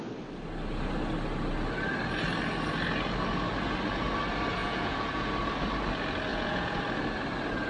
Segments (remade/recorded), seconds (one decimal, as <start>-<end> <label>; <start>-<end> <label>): 0.0-4.6 recorded; 4.6-5.3 remade; 5.3-6.3 recorded; 6.3-6.8 remade; 6.8-7.7 recorded